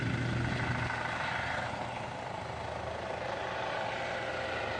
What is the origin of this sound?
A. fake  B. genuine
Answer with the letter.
B